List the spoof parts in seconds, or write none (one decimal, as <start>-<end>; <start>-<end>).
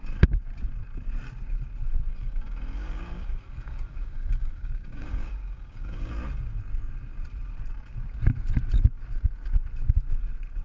2.1-6.1